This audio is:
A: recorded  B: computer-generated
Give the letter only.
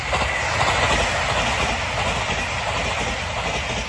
A